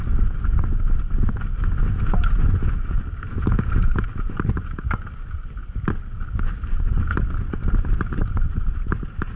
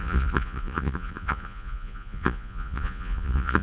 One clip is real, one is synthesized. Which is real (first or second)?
first